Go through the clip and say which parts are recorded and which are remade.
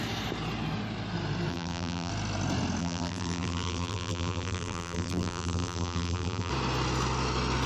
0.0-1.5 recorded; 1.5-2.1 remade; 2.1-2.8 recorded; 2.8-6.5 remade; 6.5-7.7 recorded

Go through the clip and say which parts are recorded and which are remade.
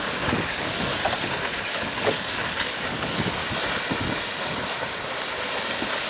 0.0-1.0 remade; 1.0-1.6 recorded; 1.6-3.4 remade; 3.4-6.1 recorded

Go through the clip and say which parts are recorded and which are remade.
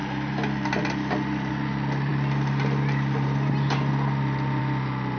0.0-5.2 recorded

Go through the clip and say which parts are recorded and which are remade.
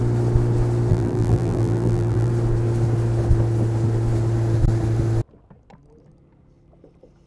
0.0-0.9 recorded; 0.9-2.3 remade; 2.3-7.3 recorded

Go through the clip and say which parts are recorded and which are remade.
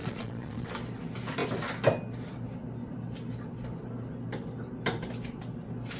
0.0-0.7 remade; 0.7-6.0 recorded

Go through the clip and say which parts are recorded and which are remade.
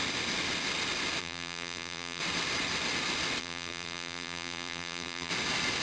0.0-1.2 recorded; 1.2-2.2 remade; 2.2-3.4 recorded; 3.4-5.3 remade; 5.3-5.8 recorded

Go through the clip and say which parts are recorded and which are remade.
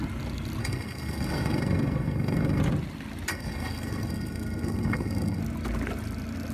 0.0-0.6 recorded; 0.6-2.6 remade; 2.6-3.3 recorded; 3.3-5.4 remade; 5.4-6.5 recorded